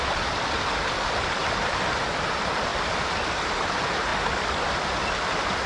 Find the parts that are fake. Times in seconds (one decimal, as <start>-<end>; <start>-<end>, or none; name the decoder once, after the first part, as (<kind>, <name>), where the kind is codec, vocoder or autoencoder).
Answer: none